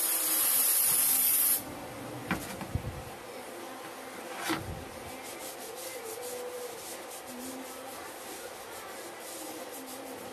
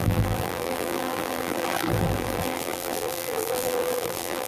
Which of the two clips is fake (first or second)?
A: second